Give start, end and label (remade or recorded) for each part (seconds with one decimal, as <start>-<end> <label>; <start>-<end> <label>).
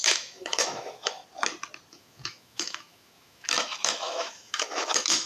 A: 0.0-1.2 remade; 1.2-1.9 recorded; 1.9-5.3 remade